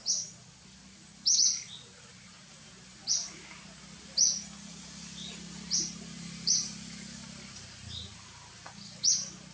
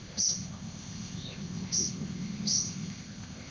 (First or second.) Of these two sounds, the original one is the first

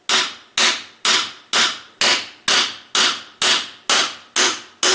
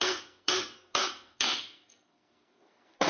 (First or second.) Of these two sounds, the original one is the first